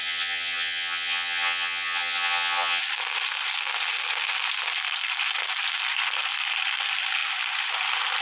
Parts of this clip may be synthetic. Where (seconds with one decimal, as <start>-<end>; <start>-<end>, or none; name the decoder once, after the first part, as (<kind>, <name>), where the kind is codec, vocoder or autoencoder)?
0.0-2.8 (vocoder, HiFi-GAN)